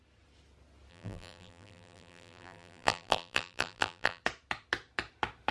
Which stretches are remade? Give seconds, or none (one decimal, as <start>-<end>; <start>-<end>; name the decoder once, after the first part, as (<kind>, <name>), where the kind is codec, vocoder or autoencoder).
0.9-4.2 (vocoder, BigVGAN v2)